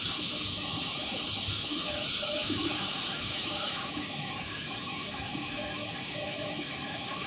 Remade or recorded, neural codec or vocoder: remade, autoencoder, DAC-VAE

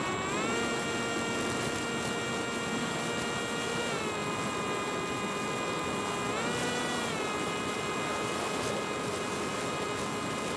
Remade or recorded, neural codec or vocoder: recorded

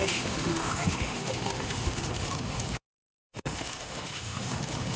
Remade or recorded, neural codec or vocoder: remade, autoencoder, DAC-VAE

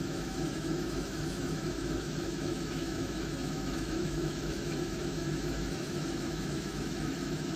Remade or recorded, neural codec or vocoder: remade, autoencoder, DAC-VAE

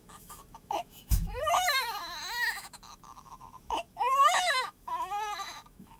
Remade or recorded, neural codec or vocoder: remade, autoencoder, DAC-VAE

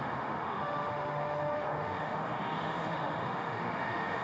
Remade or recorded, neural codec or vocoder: remade, autoencoder, DAC-VAE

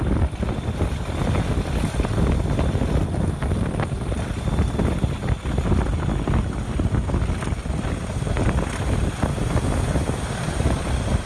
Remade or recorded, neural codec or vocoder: recorded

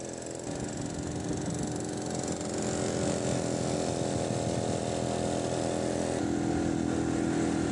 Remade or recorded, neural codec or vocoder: recorded